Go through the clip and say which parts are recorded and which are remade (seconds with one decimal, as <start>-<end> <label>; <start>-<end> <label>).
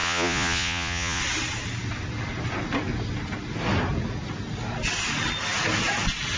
0.0-1.2 remade; 1.2-6.4 recorded